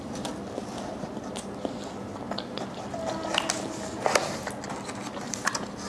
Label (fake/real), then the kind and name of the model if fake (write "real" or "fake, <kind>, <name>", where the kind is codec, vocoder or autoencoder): real